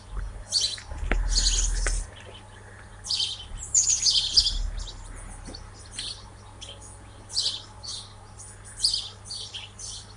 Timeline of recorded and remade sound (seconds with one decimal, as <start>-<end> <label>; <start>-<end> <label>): 0.0-10.2 recorded